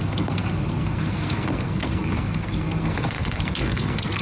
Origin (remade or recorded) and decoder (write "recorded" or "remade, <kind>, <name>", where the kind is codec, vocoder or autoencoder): remade, codec, SNAC